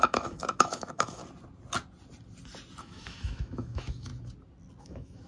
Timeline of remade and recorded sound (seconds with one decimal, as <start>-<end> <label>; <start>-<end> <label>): 0.0-1.2 remade; 1.2-2.8 recorded; 2.8-4.1 remade; 4.1-4.8 recorded; 4.8-5.3 remade